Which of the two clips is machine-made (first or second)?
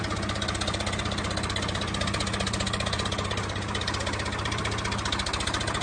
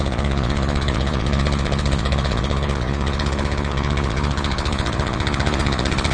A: second